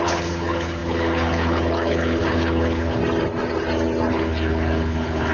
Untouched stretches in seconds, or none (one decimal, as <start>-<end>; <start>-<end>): 3.0-4.1